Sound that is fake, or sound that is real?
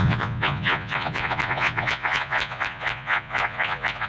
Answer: fake